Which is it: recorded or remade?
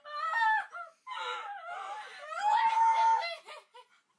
recorded